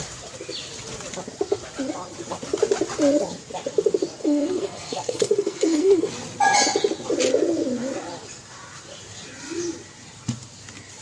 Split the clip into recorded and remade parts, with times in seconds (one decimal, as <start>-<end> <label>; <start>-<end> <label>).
0.0-4.2 recorded; 4.2-6.1 remade; 6.1-11.0 recorded